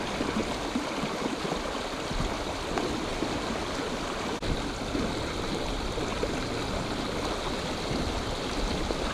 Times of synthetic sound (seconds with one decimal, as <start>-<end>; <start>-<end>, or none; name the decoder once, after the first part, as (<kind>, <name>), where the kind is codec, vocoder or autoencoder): none